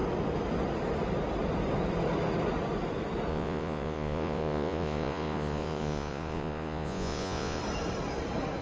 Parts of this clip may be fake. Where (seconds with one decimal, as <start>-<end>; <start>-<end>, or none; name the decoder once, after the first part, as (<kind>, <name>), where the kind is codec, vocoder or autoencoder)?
3.3-7.6 (vocoder, Vocos)